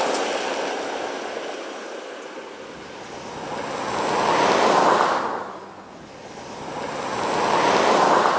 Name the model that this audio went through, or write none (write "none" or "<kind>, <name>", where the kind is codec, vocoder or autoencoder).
none